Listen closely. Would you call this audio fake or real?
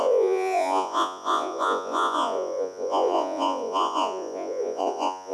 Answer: fake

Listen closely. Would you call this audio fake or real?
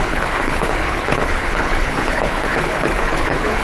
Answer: fake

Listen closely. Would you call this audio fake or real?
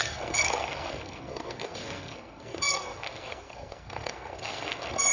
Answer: fake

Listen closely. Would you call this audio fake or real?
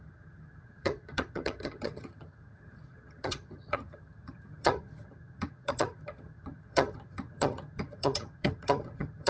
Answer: fake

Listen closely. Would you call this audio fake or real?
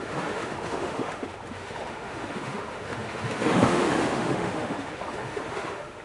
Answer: fake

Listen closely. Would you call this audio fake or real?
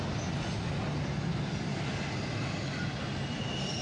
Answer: real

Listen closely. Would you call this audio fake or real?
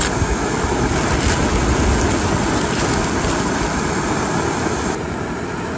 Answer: real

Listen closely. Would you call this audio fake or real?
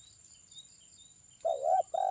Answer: fake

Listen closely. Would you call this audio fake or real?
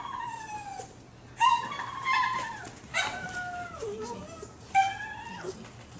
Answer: real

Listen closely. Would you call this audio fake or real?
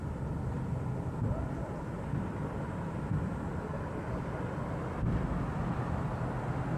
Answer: fake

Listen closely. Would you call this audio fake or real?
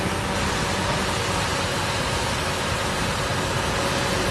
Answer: real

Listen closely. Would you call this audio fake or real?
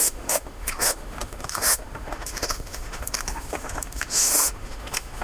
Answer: fake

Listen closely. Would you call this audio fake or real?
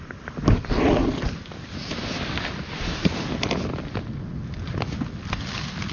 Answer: real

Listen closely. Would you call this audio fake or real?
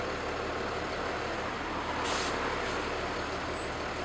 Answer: real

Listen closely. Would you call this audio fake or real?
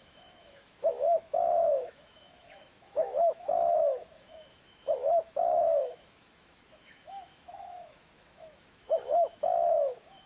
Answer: fake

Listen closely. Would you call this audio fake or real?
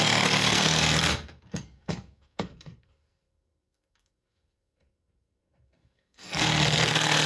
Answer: fake